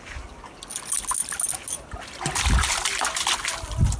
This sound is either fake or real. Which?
real